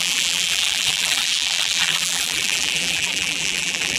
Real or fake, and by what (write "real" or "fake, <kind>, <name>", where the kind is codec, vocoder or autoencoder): fake, vocoder, BigVGAN v2